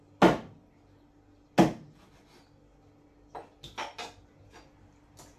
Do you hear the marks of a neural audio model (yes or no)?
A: no